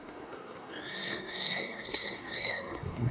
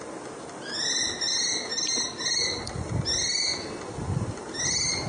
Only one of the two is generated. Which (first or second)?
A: first